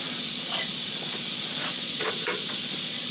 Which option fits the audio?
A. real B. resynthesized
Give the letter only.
B